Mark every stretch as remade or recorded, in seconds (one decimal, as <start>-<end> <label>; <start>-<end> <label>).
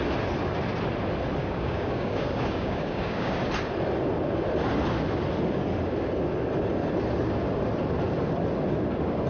0.0-1.4 recorded; 1.4-3.4 remade; 3.4-9.3 recorded